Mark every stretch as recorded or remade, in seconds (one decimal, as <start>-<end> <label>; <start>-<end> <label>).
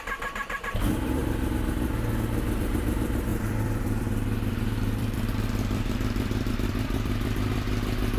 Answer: 0.0-1.2 remade; 1.2-2.6 recorded; 2.6-8.2 remade